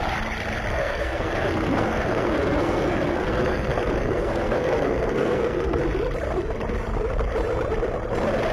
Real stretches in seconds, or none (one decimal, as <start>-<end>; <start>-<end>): 0.0-0.7; 5.8-8.5